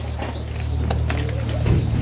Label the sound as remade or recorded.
recorded